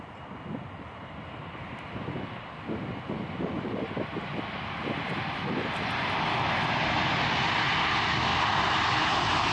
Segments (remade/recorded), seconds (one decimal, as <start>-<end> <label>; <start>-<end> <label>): 0.0-9.5 recorded